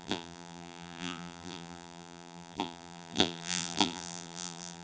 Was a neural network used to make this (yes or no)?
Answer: yes